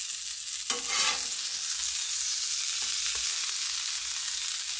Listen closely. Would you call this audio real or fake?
real